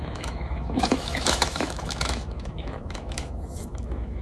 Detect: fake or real fake